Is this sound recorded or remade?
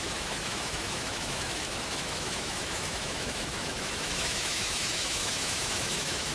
remade